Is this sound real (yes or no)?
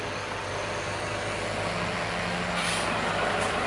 yes